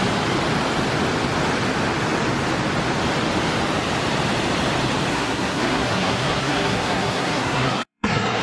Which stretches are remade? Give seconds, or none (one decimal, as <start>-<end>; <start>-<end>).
5.1-8.4